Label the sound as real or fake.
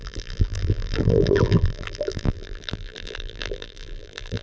fake